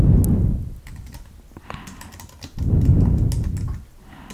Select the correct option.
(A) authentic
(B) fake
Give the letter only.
A